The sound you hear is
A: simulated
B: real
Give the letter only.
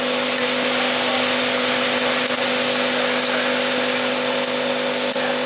B